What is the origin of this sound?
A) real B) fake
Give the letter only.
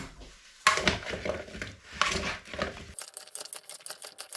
A